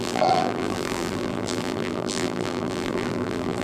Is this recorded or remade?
remade